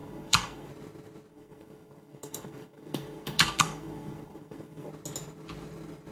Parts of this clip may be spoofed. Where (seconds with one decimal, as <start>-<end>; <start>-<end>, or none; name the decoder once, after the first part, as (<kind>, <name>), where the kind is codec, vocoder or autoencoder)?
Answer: 0.0-0.7 (codec, SNAC); 1.3-4.9